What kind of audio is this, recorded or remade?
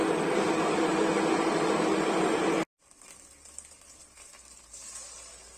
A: recorded